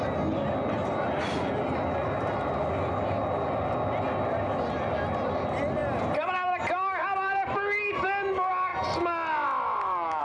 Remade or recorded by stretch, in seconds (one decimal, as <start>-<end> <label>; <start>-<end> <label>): 0.0-10.2 recorded